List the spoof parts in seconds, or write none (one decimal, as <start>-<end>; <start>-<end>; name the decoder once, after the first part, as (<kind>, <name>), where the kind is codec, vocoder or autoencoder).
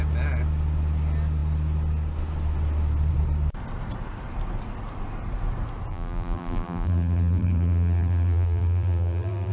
5.9-9.5 (vocoder, BigVGAN v2)